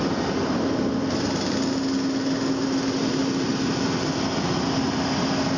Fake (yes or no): no